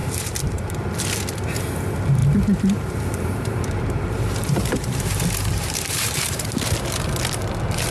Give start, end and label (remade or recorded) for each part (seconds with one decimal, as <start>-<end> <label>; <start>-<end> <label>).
0.0-0.8 remade; 0.8-2.2 recorded; 2.2-6.6 remade; 6.6-7.9 recorded